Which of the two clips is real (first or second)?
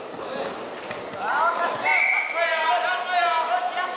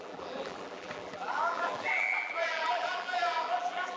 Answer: first